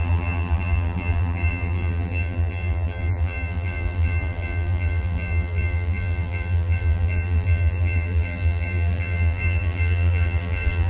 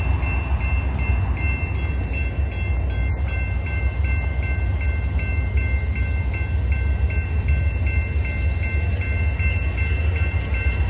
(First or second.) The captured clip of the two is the second